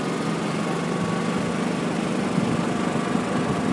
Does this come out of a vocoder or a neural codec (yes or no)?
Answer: no